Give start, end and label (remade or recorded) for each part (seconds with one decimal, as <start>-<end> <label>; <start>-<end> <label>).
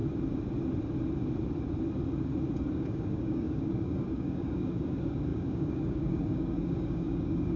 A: 0.0-2.7 recorded; 2.7-7.6 remade